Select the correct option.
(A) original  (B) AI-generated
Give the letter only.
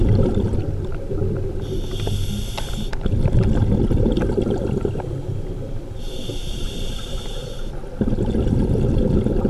A